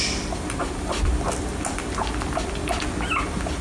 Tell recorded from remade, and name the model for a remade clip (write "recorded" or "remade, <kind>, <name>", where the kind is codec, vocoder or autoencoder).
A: recorded